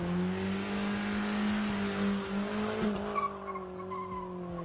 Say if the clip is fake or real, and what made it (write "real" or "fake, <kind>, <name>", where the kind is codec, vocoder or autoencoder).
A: real